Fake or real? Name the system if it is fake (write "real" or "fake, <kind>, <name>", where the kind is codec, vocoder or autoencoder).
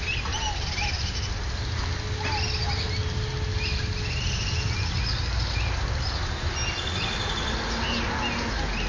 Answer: real